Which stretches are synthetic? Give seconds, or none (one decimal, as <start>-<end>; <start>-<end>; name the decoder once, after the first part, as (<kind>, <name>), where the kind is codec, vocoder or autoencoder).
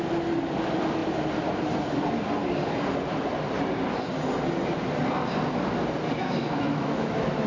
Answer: 6.2-7.5 (autoencoder, DAC-VAE)